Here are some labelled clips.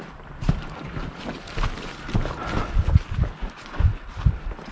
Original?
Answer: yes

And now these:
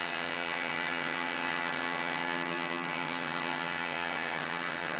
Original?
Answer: no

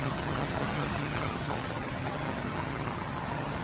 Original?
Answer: no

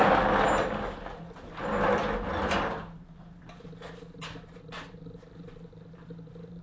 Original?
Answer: yes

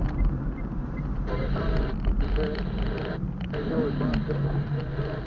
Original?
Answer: yes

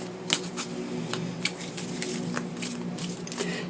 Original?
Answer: yes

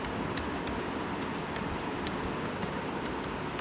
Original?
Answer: yes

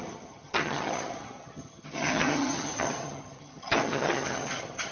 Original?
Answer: no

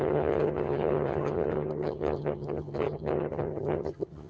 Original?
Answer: no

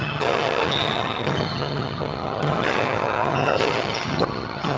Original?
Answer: no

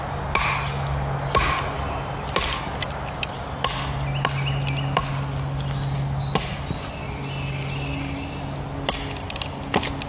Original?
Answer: yes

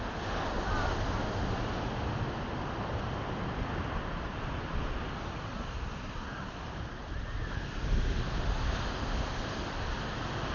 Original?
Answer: yes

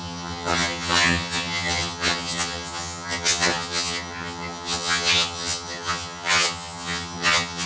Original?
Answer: no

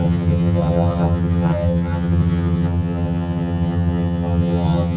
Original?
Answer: no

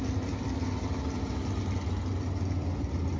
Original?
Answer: yes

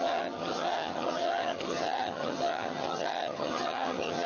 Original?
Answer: no